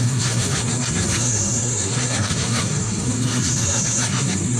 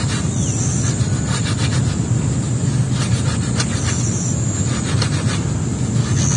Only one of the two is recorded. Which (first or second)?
second